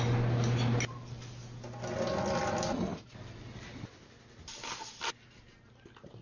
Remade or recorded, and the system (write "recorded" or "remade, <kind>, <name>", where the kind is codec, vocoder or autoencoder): recorded